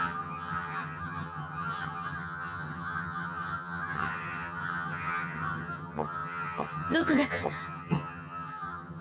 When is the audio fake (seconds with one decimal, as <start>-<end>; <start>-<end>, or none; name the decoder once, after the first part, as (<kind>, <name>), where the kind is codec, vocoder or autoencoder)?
0.0-9.0 (vocoder, HiFi-GAN)